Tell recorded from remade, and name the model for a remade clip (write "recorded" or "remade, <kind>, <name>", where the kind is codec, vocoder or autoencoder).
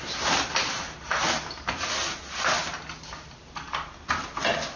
recorded